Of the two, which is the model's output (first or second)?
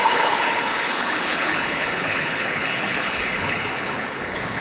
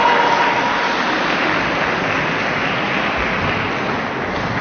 first